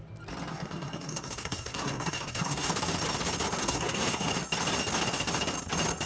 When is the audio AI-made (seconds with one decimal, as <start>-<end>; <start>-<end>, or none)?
0.5-2.7; 3.6-4.3